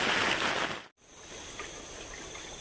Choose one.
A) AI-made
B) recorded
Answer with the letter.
B